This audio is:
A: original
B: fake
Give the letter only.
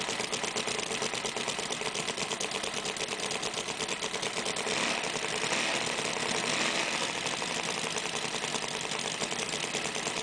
A